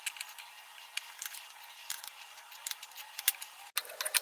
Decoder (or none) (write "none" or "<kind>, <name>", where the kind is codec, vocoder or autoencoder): none